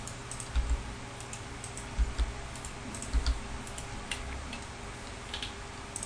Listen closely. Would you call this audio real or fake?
real